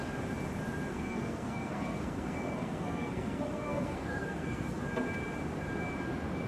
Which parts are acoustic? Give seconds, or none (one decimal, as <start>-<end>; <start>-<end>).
0.0-0.9; 4.8-6.5